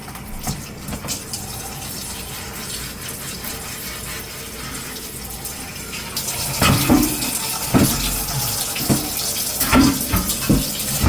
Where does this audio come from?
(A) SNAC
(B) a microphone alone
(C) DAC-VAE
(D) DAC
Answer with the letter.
B